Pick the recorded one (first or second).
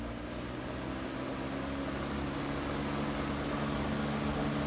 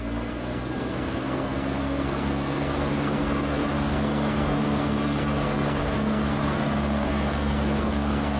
first